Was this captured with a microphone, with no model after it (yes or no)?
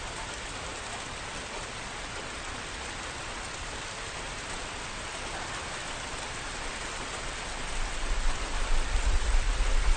yes